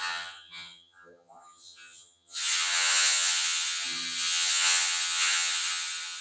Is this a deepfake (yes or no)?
yes